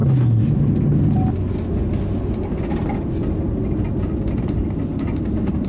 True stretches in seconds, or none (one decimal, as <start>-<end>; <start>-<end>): 0.0-5.7